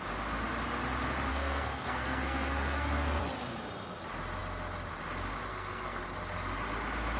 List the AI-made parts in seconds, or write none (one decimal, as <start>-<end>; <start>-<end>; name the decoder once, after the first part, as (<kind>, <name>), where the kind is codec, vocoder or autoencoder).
1.3-3.2 (codec, SNAC); 5.5-6.0